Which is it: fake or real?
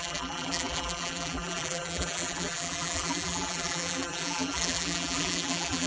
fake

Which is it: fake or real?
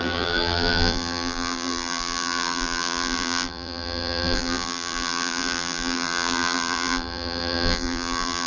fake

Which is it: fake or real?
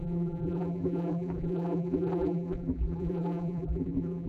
fake